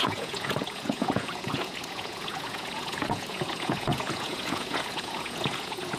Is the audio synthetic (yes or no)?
yes